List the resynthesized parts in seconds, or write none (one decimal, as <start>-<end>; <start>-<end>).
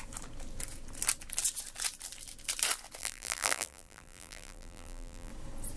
3.0-5.3